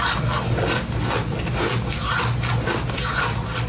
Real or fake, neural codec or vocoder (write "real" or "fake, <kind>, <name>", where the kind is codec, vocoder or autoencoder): real